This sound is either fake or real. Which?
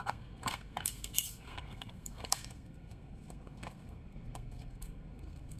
fake